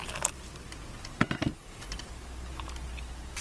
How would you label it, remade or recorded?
recorded